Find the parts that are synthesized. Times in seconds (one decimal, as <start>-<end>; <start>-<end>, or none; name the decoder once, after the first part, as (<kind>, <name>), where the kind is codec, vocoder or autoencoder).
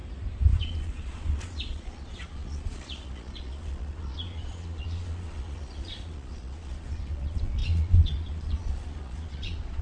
0.6-9.8 (vocoder, Vocos)